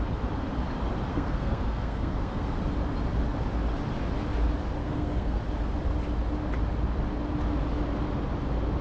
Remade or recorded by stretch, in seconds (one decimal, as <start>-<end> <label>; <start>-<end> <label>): 0.0-1.1 recorded; 1.1-2.6 remade; 2.6-4.8 recorded; 4.8-5.4 remade; 5.4-8.8 recorded